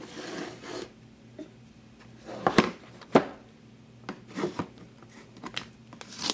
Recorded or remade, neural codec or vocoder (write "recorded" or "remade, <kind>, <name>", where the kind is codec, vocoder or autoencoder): recorded